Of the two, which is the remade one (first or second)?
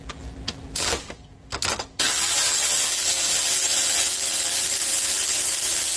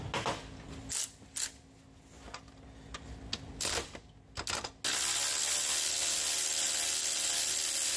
first